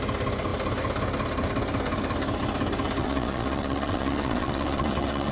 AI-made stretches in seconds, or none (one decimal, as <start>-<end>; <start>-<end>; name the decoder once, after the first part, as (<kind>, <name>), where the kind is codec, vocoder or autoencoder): 3.0-5.3 (vocoder, Vocos)